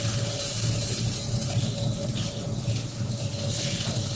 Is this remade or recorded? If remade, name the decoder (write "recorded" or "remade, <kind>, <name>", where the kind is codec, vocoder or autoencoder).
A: recorded